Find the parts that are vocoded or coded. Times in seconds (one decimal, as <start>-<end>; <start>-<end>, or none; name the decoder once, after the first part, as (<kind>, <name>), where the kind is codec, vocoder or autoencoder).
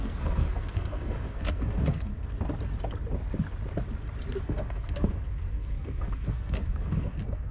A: 0.0-2.1 (codec, SNAC); 4.4-7.5